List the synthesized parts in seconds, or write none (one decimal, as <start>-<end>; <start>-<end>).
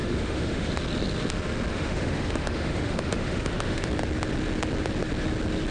0.0-0.7; 1.7-3.9